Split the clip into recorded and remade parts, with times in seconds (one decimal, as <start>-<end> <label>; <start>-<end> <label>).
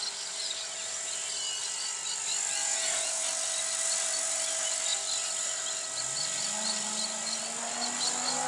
0.0-2.6 recorded; 2.6-3.2 remade; 3.2-8.5 recorded